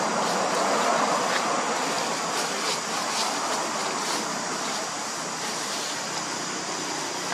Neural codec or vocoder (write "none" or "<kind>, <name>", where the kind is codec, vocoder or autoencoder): none